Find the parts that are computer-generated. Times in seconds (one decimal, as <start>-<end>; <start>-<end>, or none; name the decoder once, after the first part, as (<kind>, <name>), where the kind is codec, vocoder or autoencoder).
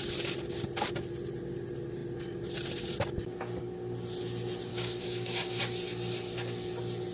4.7-5.6 (codec, DAC)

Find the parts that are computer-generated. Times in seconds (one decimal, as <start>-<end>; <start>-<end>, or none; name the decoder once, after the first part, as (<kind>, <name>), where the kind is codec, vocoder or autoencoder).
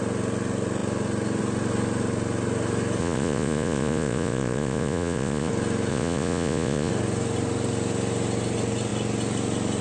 3.0-5.5 (vocoder, Vocos); 5.9-6.9